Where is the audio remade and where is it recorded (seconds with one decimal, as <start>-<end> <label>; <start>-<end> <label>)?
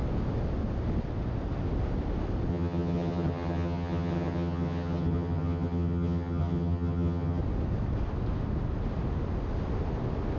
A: 0.0-2.5 recorded; 2.5-7.4 remade; 7.4-10.4 recorded